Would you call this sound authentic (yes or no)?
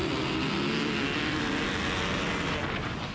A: yes